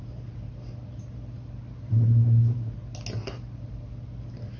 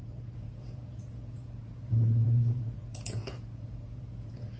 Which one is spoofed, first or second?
second